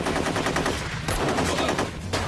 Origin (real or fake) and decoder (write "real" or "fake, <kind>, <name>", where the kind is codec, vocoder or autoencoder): real